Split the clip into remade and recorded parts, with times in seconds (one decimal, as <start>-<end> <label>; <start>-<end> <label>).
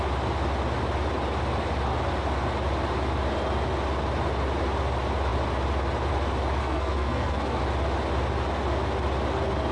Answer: 0.0-6.6 recorded; 6.6-7.6 remade; 7.6-9.7 recorded